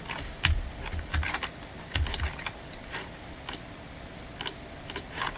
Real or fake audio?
fake